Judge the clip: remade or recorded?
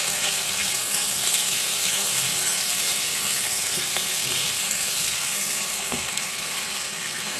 remade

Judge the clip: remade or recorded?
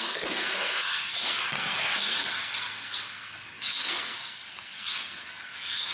remade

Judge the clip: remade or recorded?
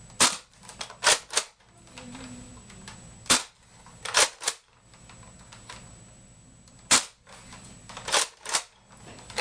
recorded